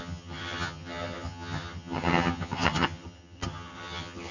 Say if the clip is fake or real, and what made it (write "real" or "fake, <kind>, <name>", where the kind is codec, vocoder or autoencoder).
fake, vocoder, HiFi-GAN